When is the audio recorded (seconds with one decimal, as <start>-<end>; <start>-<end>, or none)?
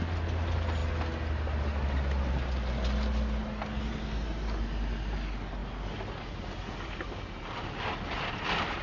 0.0-8.8